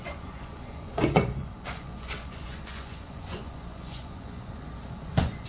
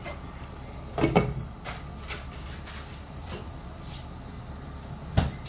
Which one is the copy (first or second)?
first